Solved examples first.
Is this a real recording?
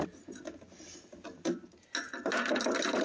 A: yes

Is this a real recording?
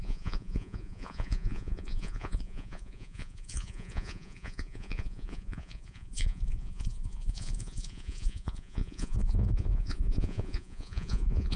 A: no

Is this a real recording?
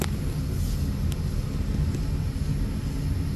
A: yes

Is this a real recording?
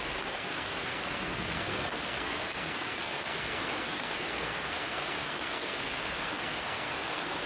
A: no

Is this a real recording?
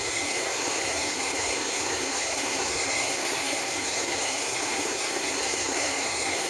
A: no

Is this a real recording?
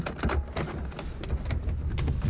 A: yes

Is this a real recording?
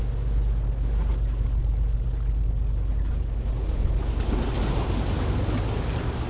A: yes